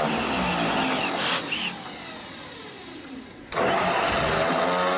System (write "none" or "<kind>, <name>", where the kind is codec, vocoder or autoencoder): none